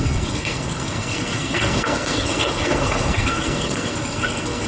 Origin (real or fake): fake